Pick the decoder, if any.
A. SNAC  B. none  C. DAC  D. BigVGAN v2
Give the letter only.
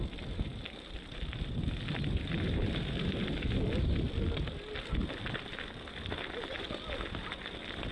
B